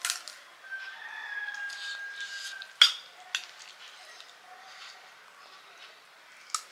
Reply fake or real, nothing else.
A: real